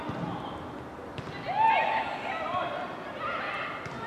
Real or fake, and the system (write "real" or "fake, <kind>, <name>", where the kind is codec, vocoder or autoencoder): real